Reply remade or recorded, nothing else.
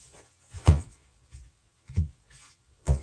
remade